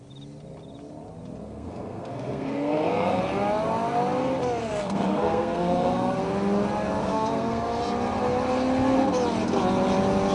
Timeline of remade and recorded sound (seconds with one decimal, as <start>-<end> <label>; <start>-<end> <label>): 0.0-1.4 recorded; 1.4-3.2 remade; 3.2-4.6 recorded; 4.6-6.2 remade; 6.2-7.0 recorded; 7.0-7.8 remade; 7.8-10.3 recorded